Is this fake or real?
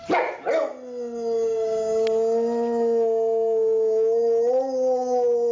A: real